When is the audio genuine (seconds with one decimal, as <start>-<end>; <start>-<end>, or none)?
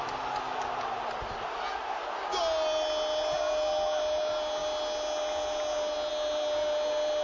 0.0-7.2